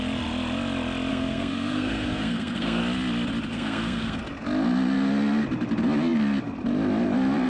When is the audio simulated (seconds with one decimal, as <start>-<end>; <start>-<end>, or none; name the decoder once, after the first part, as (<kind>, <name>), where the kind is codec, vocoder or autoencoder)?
1.1-2.8 (codec, SNAC); 3.5-4.2